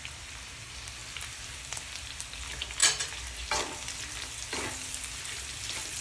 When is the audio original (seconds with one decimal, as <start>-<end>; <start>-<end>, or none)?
0.0-2.8; 4.0-6.0